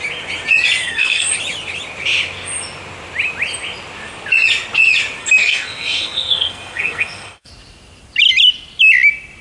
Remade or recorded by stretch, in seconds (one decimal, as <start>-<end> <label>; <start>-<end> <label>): 0.0-0.8 recorded; 0.8-1.3 remade; 1.3-5.2 recorded; 5.2-7.5 remade; 7.5-9.4 recorded